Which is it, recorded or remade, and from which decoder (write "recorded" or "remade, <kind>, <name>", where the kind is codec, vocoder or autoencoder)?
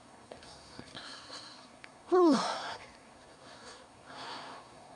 remade, codec, SNAC